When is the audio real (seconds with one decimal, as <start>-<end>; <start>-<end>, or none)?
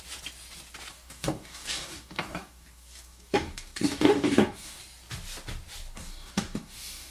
0.0-0.9; 4.8-5.9